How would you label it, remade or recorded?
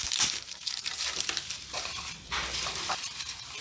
remade